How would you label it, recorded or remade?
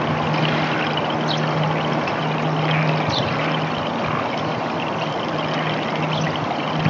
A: recorded